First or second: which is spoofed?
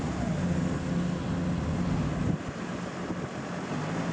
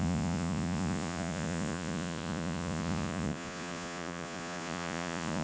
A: second